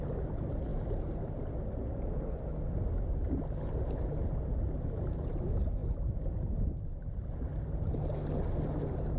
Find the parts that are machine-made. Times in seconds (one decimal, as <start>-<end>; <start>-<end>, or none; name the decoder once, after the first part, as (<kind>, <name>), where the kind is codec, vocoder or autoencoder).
none